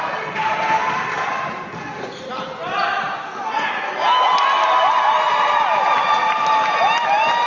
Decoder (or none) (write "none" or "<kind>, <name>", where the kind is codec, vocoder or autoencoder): none